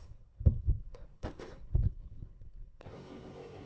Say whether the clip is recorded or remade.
remade